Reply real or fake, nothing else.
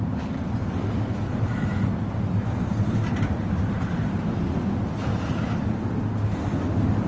real